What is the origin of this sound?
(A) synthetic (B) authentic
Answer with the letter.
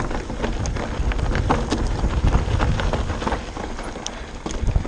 B